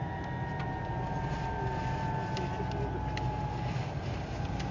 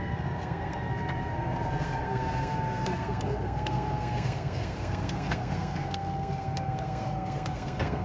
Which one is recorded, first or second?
first